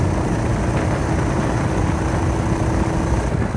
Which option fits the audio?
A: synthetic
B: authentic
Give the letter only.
B